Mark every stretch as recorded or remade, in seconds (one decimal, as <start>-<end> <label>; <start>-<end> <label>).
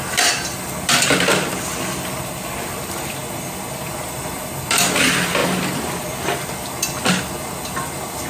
0.0-8.3 recorded